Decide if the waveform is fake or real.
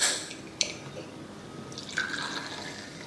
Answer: real